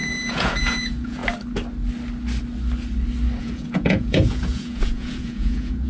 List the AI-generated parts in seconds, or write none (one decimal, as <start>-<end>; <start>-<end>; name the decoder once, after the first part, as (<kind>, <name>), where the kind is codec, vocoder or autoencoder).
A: 0.0-1.2 (vocoder, Vocos); 3.4-5.9